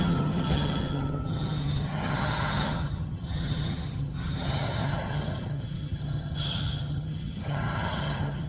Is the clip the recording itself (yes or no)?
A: no